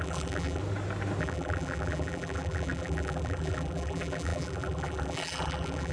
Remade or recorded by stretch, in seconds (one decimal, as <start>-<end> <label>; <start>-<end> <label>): 0.0-0.6 remade; 0.6-1.2 recorded; 1.2-5.9 remade